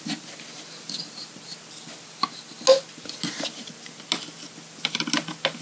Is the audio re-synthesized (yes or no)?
no